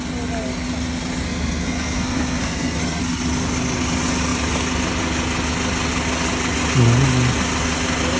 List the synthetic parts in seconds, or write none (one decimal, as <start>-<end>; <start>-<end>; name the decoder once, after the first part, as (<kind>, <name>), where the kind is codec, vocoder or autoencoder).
1.2-3.0 (codec, SNAC)